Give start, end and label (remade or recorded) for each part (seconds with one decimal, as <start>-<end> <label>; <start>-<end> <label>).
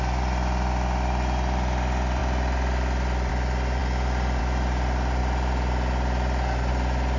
0.0-7.2 recorded